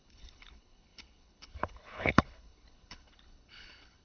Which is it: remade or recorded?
remade